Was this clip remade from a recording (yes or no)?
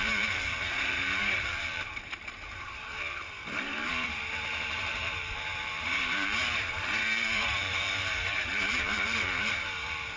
yes